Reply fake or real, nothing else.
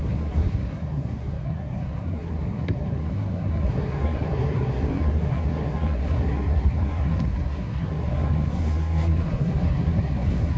fake